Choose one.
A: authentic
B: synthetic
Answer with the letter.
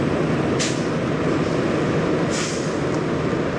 A